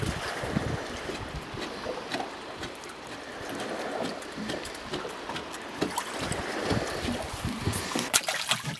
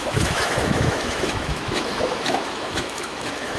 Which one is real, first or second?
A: first